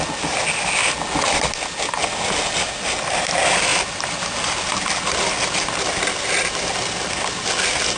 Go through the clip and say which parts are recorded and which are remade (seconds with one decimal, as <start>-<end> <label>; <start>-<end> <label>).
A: 0.0-8.0 recorded

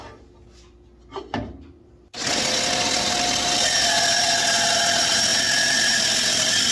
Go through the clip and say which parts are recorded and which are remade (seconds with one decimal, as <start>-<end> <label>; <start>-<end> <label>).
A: 0.0-6.7 recorded

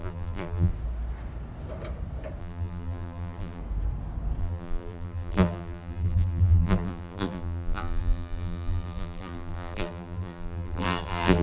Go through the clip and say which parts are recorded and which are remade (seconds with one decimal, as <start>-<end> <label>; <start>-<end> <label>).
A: 0.0-0.7 remade; 0.7-2.4 recorded; 2.4-3.6 remade; 3.6-4.4 recorded; 4.4-11.4 remade

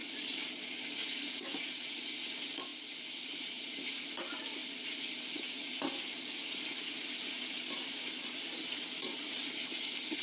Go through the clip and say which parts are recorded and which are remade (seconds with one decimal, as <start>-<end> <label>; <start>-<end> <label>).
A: 0.0-10.2 recorded

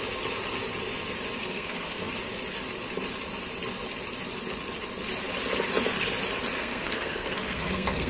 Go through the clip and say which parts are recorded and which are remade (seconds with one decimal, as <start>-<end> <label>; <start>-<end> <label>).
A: 0.0-1.4 recorded; 1.4-2.0 remade; 2.0-6.6 recorded; 6.6-8.1 remade

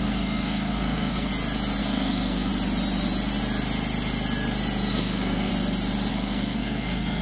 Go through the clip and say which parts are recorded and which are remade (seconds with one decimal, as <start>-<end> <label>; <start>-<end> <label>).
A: 0.0-1.3 remade; 1.3-1.8 recorded; 1.8-2.5 remade; 2.5-4.9 recorded; 4.9-5.5 remade; 5.5-6.1 recorded; 6.1-7.2 remade